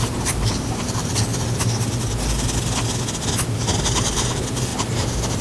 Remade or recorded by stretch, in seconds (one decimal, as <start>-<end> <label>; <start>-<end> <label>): 0.0-1.3 remade; 1.3-3.8 recorded; 3.8-5.4 remade